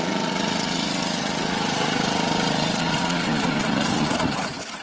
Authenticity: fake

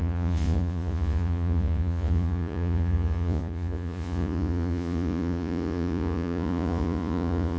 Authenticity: fake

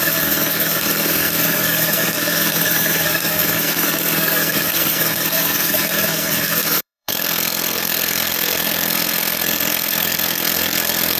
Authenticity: fake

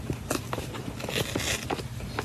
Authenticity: real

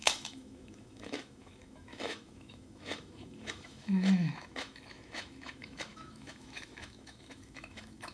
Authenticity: fake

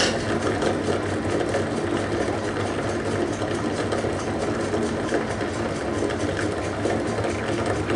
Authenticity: real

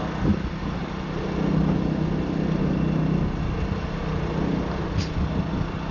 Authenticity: real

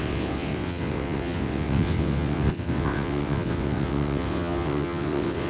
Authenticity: fake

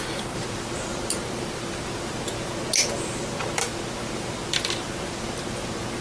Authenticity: fake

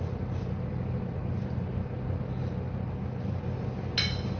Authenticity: real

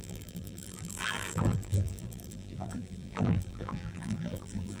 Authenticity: fake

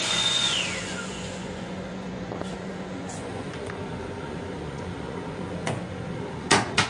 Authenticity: fake